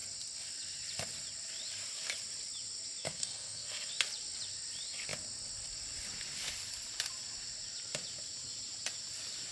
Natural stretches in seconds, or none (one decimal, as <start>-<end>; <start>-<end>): 0.0-3.0; 3.9-9.5